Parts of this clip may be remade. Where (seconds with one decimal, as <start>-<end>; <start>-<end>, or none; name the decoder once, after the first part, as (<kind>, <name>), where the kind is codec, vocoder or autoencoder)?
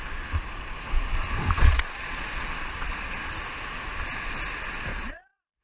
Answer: 1.6-3.3 (vocoder, Vocos); 4.9-5.6